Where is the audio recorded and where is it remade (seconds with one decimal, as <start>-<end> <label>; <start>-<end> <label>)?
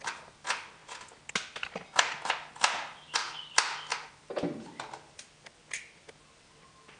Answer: 0.0-0.8 remade; 0.8-2.5 recorded; 2.5-7.0 remade